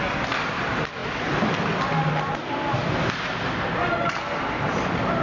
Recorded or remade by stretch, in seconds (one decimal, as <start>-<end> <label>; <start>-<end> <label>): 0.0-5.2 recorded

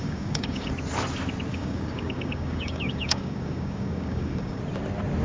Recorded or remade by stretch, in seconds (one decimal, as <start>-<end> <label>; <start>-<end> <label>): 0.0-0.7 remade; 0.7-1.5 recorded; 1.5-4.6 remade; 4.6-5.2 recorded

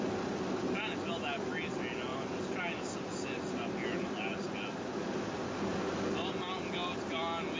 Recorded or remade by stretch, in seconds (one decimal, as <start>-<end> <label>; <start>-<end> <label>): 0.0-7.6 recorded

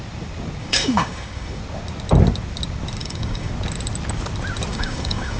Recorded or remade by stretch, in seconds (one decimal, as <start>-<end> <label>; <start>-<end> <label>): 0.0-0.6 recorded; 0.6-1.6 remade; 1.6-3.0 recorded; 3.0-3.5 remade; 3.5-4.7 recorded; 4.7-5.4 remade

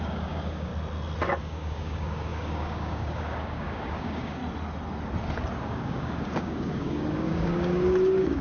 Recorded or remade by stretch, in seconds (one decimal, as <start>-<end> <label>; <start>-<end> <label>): 0.0-0.7 remade; 0.7-1.4 recorded; 1.4-4.4 remade; 4.4-5.6 recorded; 5.6-8.4 remade

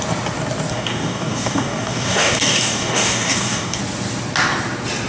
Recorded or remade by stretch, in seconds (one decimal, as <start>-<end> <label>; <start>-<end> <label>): 0.0-0.7 recorded; 0.7-3.8 remade; 3.8-5.1 recorded